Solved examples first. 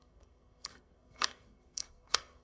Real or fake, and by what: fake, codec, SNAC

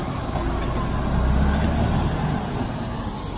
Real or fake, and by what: real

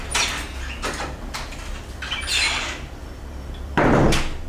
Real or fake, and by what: real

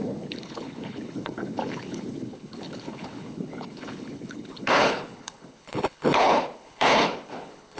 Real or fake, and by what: fake, codec, HILCodec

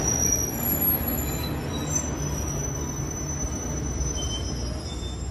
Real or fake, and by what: real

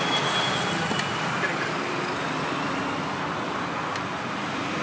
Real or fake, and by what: real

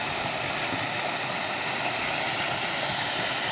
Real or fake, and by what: real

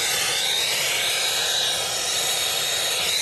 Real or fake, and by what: real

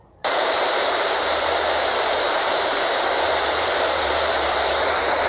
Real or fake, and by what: fake, vocoder, BigVGAN v2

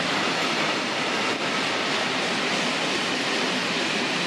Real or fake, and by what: fake, vocoder, BigVGAN v2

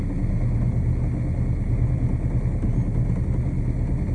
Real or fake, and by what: real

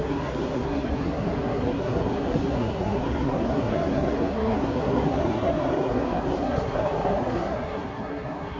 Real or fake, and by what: fake, codec, SNAC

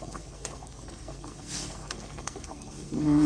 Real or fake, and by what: fake, codec, SNAC